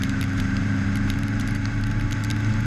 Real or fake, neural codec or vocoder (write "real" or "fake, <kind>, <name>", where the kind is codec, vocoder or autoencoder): fake, vocoder, BigVGAN v2